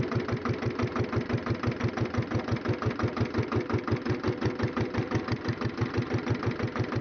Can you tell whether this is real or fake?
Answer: real